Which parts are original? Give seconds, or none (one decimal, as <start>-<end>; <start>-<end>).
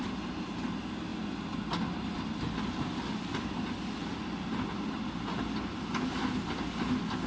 0.0-7.3